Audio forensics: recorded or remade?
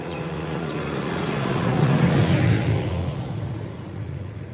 remade